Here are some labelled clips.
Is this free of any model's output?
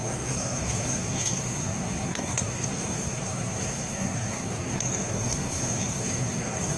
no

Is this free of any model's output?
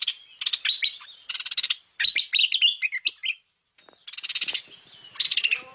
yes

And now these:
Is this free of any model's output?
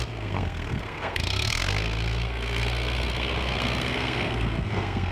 no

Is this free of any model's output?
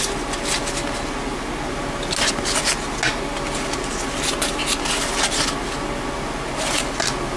yes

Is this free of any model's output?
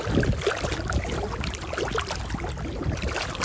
yes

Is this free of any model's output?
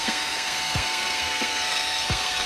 no